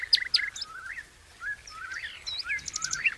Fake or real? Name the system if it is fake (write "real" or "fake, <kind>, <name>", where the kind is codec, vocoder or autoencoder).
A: real